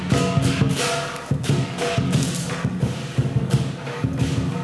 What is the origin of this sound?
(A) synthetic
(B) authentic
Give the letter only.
A